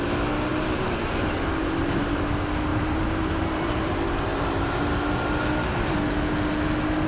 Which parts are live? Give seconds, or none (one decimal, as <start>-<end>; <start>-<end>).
0.0-0.5; 2.2-2.7; 4.8-7.1